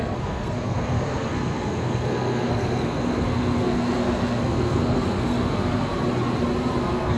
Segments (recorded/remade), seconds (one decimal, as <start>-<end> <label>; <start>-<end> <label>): 0.0-5.9 remade; 5.9-6.8 recorded; 6.8-7.2 remade